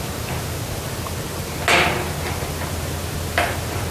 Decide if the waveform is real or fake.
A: real